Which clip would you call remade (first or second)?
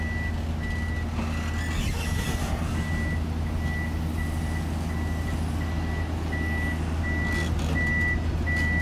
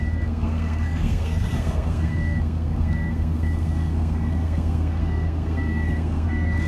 second